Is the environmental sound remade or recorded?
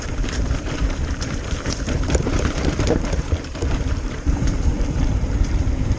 remade